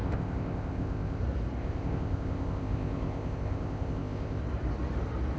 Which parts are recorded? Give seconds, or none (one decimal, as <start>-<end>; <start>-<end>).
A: 1.2-1.6; 4.4-5.4